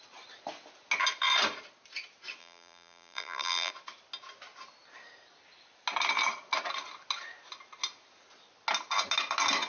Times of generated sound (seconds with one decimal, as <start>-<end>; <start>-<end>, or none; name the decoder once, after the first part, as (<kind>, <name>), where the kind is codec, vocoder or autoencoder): 2.4-3.7 (vocoder, BigVGAN v2)